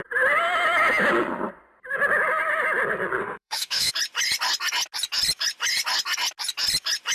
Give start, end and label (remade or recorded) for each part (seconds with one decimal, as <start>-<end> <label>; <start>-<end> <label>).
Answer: 0.0-3.2 recorded; 3.2-3.9 remade; 3.9-7.1 recorded